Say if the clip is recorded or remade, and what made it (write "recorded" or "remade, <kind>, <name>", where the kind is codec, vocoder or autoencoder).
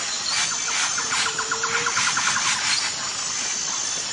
recorded